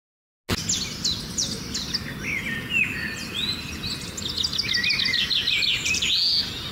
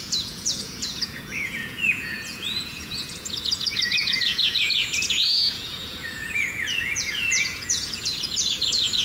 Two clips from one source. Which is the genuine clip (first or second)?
first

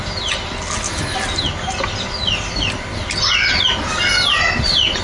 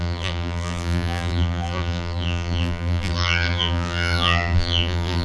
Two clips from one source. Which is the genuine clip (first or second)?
first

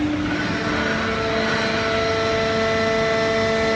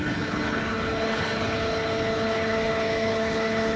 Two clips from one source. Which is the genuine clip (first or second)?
first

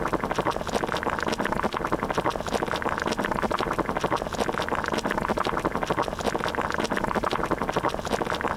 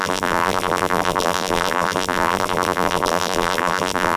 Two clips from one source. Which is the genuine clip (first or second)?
first